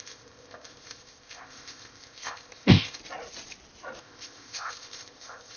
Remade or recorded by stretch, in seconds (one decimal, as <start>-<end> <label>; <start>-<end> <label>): 0.0-3.0 remade; 3.0-4.0 recorded; 4.0-5.6 remade